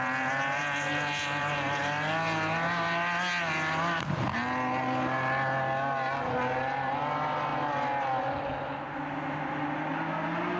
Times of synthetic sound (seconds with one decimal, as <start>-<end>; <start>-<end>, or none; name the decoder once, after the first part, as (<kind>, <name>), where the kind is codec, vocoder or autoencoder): none

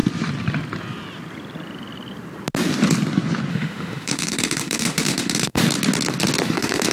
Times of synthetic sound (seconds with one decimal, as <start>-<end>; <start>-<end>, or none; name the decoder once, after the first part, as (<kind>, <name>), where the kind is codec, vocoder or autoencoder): 3.5-5.6 (autoencoder, DAC-VAE); 6.5-6.9

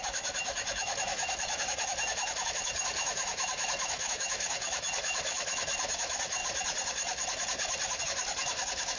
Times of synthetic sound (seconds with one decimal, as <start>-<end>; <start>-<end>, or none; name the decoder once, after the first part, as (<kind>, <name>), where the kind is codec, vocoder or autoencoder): 0.0-6.4 (autoencoder, DAC-VAE); 8.0-9.0

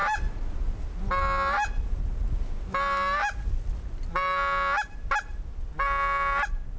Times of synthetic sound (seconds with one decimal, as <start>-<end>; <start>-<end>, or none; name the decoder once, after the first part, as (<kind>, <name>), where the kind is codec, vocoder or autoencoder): none

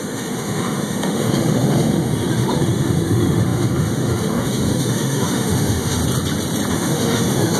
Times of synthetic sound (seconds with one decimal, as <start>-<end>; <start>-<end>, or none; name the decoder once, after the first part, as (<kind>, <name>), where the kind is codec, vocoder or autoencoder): 0.0-6.0 (autoencoder, DAC-VAE); 6.7-7.6

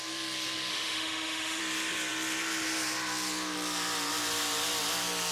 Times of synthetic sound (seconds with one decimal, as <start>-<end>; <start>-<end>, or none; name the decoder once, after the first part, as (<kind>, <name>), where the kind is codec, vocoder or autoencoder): 0.7-1.6 (autoencoder, DAC-VAE)

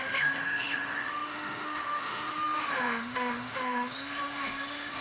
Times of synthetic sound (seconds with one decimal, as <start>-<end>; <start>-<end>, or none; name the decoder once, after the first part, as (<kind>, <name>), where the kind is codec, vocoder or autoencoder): 0.0-5.0 (autoencoder, DAC-VAE)